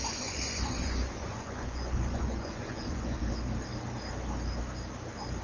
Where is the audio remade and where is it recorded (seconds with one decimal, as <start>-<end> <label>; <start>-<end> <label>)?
0.0-3.2 remade; 3.2-5.4 recorded

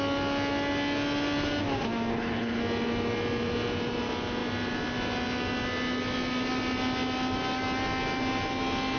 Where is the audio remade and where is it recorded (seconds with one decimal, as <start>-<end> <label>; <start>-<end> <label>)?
0.0-2.1 recorded; 2.1-2.6 remade; 2.6-9.0 recorded

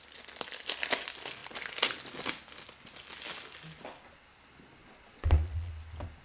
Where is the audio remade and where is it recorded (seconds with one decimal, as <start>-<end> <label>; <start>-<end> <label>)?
0.0-4.8 recorded; 4.8-5.7 remade; 5.7-6.2 recorded

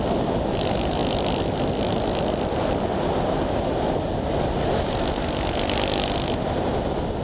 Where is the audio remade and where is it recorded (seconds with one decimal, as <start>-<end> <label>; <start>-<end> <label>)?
0.0-7.2 recorded

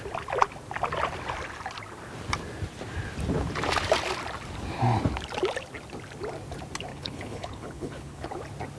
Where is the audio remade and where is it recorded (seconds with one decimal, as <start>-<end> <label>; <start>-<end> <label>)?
0.0-6.9 recorded; 6.9-8.3 remade; 8.3-8.8 recorded

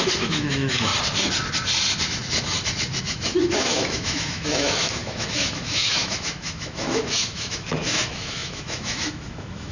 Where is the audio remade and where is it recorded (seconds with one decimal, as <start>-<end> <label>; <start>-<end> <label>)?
0.0-0.9 remade; 0.9-3.0 recorded; 3.0-9.7 remade

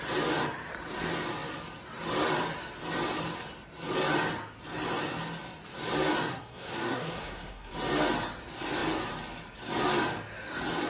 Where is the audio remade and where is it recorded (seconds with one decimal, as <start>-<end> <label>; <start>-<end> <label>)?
0.0-6.3 recorded; 6.3-7.7 remade; 7.7-10.9 recorded

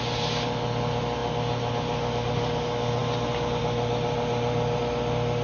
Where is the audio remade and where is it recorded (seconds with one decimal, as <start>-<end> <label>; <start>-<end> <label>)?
0.0-5.4 recorded